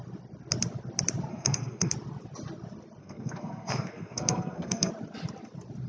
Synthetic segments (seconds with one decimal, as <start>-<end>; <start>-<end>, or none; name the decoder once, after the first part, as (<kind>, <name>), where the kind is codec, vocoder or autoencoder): 1.3-1.9 (codec, SNAC); 3.0-4.9

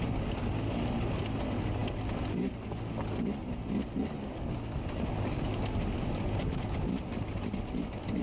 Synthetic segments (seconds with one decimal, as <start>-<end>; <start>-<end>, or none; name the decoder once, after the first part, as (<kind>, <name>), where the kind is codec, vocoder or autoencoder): none

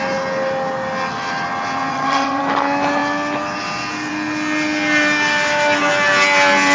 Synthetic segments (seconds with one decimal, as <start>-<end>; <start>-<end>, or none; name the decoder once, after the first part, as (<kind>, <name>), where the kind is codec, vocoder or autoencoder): 1.9-2.4 (vocoder, HiFi-GAN)

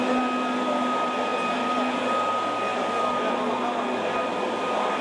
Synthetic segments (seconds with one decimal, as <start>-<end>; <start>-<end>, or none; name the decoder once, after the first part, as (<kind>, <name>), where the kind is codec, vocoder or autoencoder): none